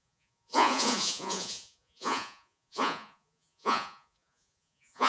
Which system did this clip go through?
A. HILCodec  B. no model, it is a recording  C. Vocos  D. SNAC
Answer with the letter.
C